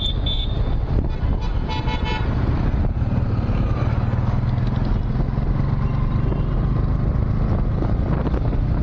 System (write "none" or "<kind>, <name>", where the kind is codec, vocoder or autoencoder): none